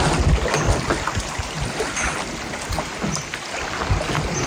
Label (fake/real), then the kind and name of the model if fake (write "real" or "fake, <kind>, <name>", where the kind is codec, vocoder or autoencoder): real